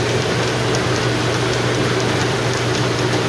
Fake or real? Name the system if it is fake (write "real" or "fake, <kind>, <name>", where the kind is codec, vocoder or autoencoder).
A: real